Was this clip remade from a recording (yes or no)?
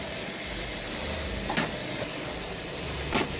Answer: yes